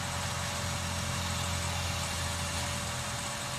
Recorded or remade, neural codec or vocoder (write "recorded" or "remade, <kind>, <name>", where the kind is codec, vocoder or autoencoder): recorded